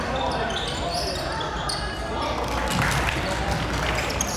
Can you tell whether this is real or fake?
fake